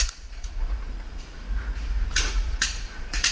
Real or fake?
fake